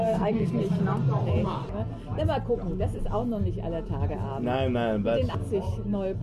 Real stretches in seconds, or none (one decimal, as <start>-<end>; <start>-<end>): 0.5-6.2